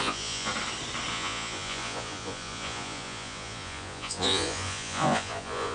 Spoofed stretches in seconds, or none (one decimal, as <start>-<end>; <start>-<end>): 0.0-0.5; 1.1-5.7